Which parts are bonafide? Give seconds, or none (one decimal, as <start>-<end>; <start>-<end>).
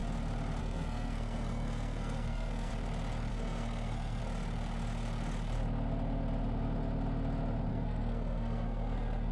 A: 0.0-0.6; 2.7-3.3; 4.2-7.7